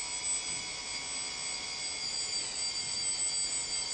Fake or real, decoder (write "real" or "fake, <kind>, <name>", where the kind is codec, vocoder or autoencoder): real